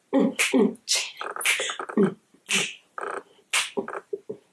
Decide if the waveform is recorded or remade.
recorded